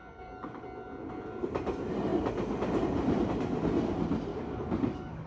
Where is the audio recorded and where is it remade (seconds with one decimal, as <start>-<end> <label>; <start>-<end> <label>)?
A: 0.0-0.6 remade; 0.6-4.3 recorded; 4.3-5.3 remade